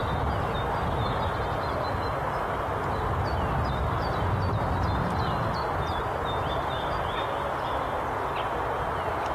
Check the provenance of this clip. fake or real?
real